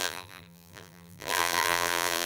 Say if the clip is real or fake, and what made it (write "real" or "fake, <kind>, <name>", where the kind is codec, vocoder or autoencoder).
fake, vocoder, BigVGAN v2